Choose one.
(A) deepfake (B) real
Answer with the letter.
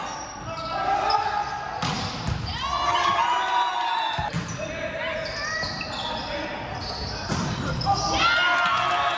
B